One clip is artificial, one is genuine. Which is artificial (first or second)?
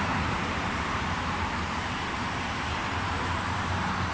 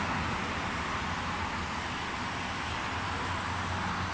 first